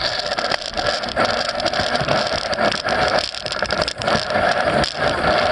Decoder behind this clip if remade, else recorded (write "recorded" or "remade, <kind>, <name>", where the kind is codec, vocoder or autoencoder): recorded